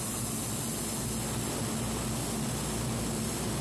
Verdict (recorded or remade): recorded